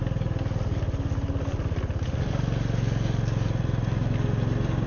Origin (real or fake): real